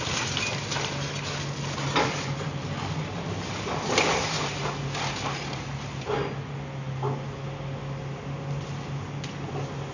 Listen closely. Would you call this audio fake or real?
real